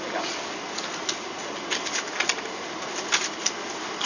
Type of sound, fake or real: real